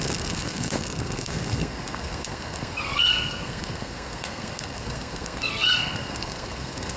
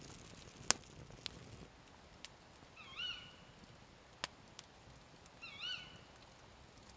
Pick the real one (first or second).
second